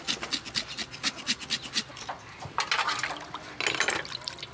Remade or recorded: recorded